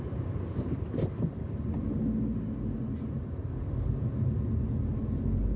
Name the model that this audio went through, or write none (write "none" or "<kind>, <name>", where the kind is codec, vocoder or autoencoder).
none